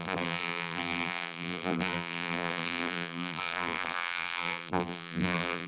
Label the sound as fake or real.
fake